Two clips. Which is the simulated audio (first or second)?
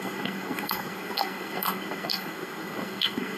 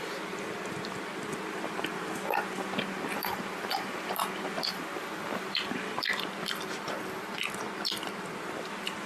first